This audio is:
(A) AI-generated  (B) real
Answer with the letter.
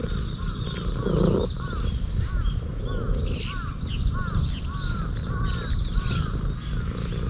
B